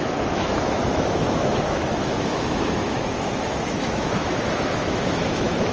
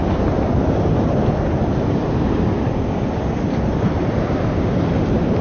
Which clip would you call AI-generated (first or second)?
first